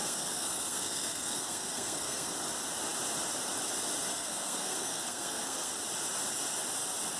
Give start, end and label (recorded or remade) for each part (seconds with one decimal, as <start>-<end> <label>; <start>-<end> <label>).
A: 0.0-2.3 remade; 2.3-4.1 recorded; 4.1-5.7 remade; 5.7-7.2 recorded